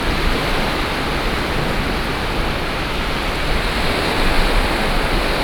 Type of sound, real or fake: real